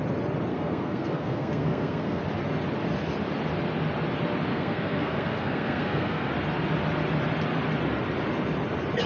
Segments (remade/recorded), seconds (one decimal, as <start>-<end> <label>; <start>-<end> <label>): 0.0-0.5 recorded; 0.5-2.2 remade; 2.2-4.5 recorded; 4.5-6.3 remade; 6.3-9.1 recorded